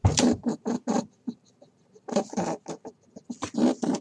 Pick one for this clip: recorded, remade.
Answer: recorded